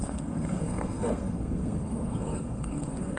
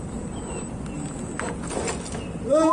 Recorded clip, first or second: second